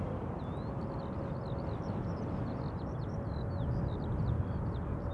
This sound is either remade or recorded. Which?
recorded